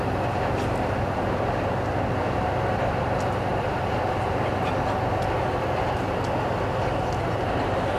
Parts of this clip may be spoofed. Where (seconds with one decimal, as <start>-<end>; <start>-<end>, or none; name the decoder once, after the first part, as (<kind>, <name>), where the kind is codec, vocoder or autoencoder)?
3.5-4.5 (vocoder, BigVGAN v2)